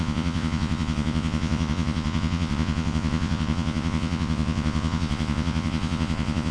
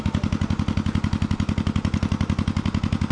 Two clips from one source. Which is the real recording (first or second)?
second